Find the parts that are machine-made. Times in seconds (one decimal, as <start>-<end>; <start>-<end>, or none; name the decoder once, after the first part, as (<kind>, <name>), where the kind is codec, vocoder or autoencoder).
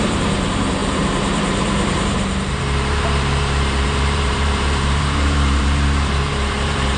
0.0-7.0 (vocoder, BigVGAN v2)